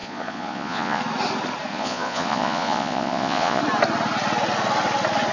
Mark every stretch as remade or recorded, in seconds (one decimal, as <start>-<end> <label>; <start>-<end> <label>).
0.0-1.0 remade; 1.0-1.7 recorded; 1.7-3.6 remade; 3.6-5.3 recorded